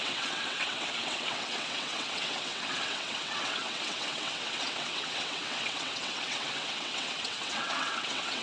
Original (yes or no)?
no